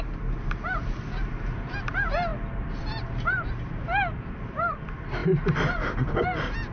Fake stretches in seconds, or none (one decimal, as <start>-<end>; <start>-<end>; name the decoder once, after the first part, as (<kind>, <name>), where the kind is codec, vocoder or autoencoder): none